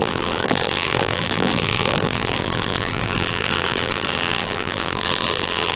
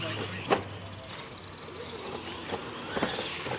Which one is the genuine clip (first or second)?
second